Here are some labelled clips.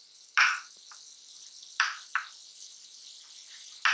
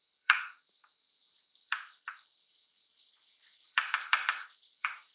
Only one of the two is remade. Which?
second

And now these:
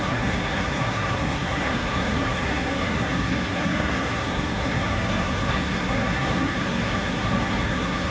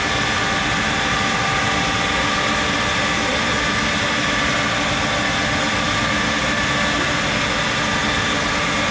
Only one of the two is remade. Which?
first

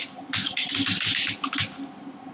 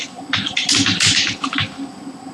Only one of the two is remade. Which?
second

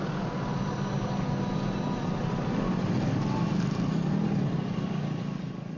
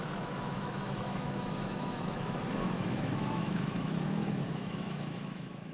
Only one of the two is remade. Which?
second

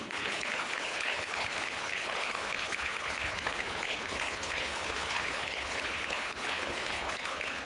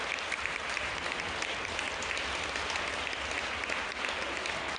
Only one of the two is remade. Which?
first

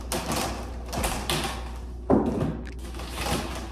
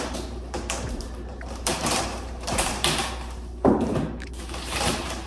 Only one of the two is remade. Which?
second